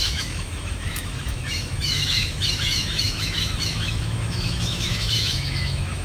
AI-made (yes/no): yes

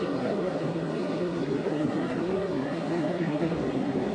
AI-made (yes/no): yes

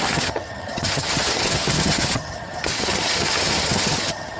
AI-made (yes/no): yes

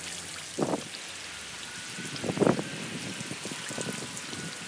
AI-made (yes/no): no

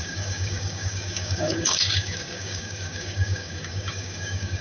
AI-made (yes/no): yes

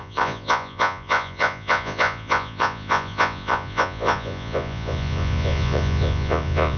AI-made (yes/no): yes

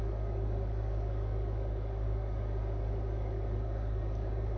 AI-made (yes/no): yes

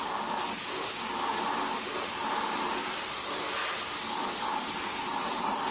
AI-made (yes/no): no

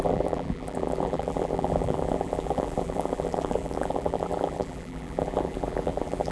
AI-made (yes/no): yes